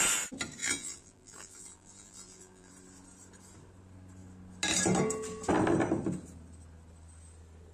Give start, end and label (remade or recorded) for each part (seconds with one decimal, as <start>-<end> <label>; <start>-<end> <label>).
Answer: 0.0-0.6 recorded; 0.6-2.7 remade; 2.7-7.7 recorded

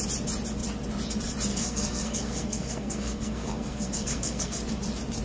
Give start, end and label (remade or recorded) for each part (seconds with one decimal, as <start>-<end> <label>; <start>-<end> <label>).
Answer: 0.0-1.5 recorded; 1.5-4.6 remade; 4.6-5.2 recorded

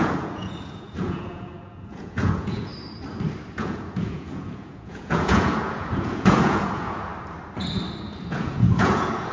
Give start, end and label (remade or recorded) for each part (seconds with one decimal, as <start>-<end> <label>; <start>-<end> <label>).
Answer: 0.0-2.7 remade; 2.7-3.5 recorded; 3.5-7.1 remade; 7.1-8.3 recorded; 8.3-9.3 remade

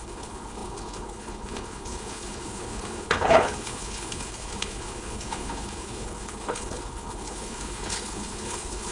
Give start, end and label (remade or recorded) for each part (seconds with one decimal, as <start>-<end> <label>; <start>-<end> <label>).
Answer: 0.0-8.9 remade